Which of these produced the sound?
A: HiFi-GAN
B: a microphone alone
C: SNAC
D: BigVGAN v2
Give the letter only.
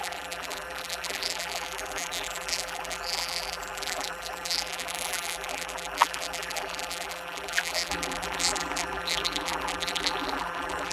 D